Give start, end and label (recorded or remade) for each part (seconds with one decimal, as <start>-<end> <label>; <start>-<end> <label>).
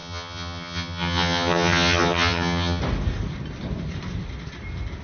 0.0-2.8 remade; 2.8-5.0 recorded